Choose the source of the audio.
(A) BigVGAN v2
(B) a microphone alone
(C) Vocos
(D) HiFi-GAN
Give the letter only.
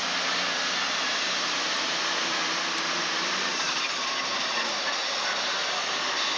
B